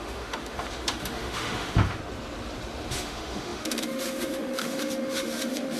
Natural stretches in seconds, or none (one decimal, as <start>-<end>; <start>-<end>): 2.0-2.9